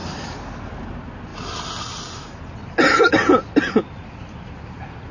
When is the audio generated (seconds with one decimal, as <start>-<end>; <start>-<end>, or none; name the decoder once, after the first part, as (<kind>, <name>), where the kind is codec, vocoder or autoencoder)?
none